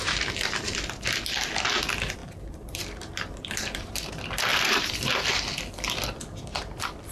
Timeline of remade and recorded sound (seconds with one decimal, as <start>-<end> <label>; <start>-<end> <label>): 0.0-2.2 recorded; 2.2-4.1 remade; 4.1-4.5 recorded; 4.5-5.2 remade; 5.2-7.1 recorded